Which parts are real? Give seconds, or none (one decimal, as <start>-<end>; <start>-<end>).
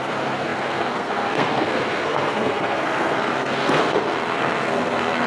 none